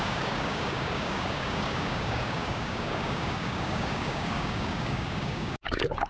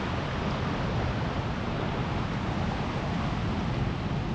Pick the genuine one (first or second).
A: second